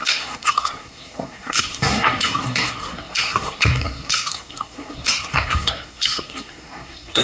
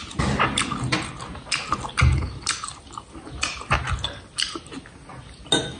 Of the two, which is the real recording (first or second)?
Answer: second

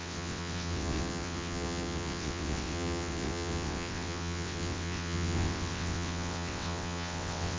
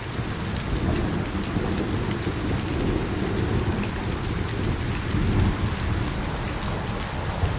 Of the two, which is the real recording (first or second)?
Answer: second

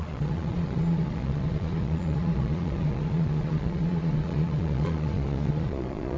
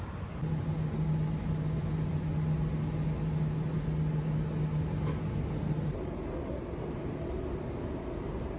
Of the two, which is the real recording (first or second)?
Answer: second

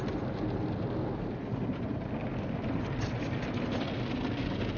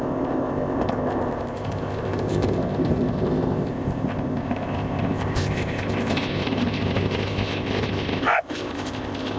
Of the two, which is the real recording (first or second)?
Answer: first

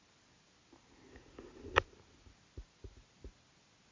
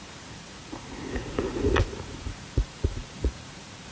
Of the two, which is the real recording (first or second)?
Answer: first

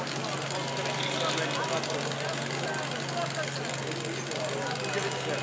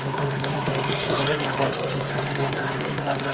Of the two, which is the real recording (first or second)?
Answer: first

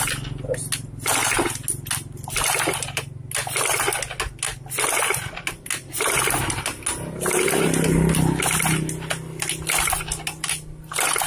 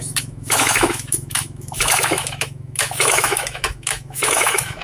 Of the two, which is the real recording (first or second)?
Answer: first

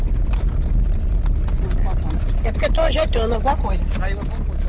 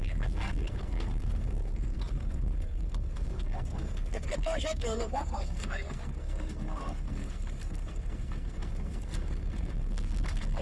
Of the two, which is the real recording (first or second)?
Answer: first